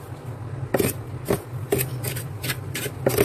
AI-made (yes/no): no